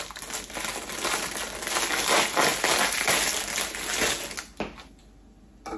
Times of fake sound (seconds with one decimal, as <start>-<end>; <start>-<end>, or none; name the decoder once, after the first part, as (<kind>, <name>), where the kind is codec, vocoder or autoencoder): none